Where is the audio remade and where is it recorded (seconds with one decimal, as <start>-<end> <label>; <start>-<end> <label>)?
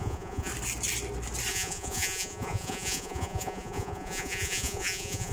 0.0-0.5 remade; 0.5-1.5 recorded; 1.5-5.3 remade